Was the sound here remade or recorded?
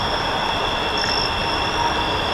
recorded